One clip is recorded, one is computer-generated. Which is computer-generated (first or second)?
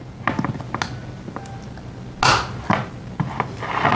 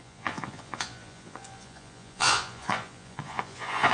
second